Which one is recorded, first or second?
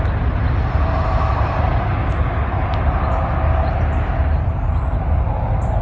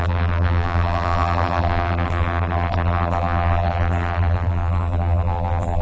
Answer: first